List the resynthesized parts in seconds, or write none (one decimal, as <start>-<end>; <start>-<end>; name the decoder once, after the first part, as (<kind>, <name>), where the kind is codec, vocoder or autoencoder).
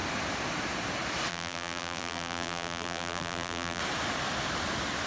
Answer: 1.3-3.8 (vocoder, BigVGAN v2)